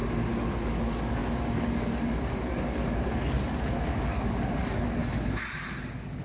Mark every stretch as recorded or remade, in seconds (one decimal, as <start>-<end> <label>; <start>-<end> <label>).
0.0-0.5 recorded; 0.5-5.0 remade; 5.0-5.8 recorded; 5.8-6.2 remade